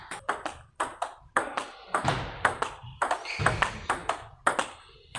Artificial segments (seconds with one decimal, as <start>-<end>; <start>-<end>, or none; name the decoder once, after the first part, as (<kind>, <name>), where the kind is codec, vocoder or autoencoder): none